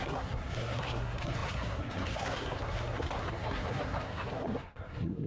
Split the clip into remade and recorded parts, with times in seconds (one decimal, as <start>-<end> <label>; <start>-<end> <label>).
0.0-5.3 remade